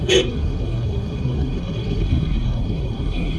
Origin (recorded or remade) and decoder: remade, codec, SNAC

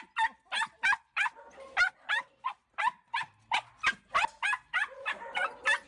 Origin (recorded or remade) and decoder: recorded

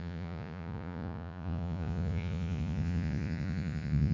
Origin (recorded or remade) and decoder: remade, vocoder, Vocos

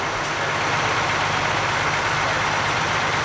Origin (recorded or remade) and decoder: recorded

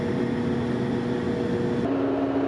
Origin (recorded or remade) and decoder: recorded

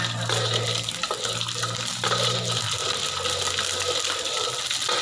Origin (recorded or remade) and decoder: recorded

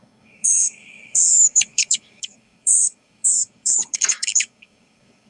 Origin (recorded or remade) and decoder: remade, codec, DAC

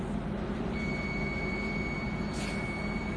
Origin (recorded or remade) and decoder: recorded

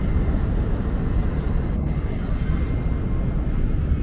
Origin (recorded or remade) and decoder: recorded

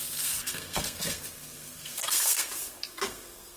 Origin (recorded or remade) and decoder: remade, codec, SNAC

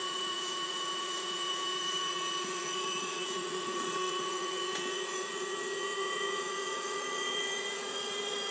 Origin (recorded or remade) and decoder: remade, vocoder, Vocos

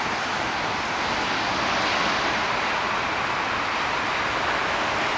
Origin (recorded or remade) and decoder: recorded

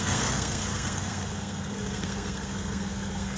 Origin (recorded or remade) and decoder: remade, codec, SNAC